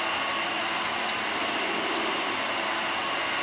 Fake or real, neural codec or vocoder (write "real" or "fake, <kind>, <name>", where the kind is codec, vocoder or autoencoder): real